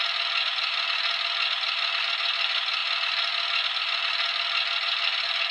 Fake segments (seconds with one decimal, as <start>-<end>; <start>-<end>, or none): none